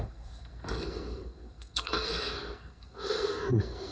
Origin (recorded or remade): remade